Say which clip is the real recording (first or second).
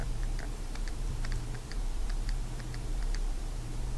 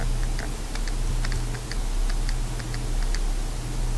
second